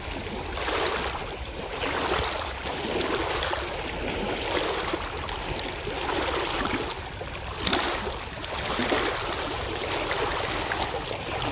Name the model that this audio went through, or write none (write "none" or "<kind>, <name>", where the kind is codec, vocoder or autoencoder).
none